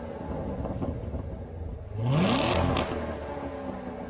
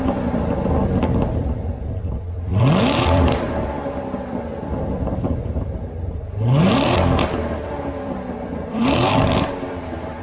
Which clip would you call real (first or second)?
first